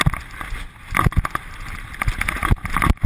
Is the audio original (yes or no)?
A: yes